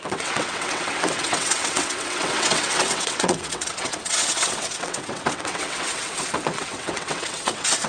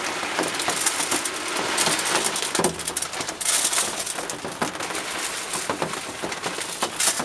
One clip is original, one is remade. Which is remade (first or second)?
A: first